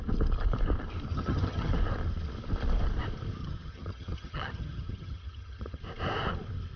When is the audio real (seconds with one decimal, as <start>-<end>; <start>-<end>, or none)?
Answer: 0.0-1.1; 1.7-3.4; 5.8-6.8